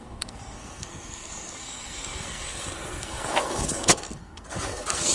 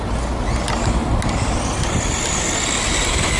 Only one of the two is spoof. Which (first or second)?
first